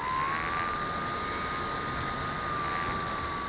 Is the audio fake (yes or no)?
no